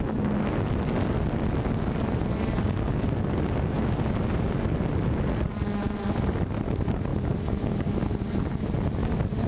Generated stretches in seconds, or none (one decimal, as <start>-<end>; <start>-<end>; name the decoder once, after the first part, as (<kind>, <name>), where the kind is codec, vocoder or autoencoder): none